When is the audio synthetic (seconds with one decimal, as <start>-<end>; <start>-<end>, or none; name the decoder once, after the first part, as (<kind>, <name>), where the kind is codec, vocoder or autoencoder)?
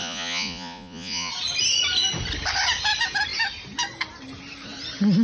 0.0-1.3 (vocoder, Vocos)